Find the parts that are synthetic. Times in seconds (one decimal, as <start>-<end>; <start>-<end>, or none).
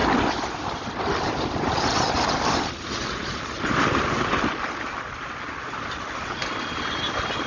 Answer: 0.0-3.0; 5.6-7.5